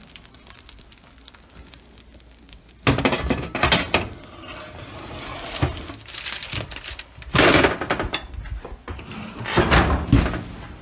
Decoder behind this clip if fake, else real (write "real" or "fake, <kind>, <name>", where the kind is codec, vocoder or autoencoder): real